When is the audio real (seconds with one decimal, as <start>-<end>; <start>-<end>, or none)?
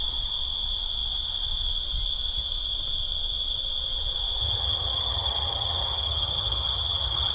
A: 0.0-4.4